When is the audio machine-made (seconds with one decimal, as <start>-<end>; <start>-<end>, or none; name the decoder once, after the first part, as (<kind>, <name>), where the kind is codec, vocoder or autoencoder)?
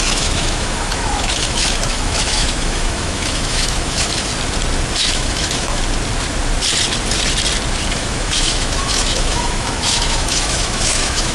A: 0.0-4.3 (autoencoder, DAC-VAE); 5.0-5.8; 7.9-11.3